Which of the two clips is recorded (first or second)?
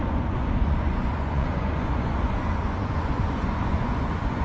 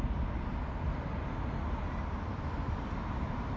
second